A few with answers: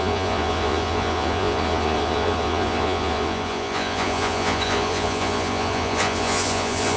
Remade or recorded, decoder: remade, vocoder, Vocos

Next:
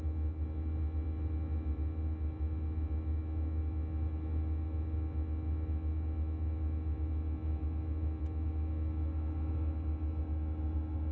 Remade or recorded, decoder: recorded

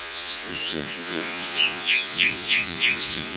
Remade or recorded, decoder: remade, vocoder, Vocos